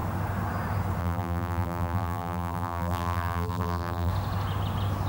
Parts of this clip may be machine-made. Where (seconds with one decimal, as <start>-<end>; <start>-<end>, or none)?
1.0-4.1